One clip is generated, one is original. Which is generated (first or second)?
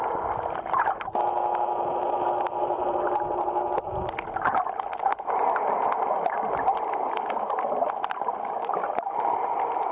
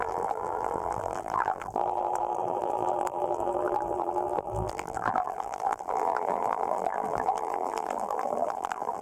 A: second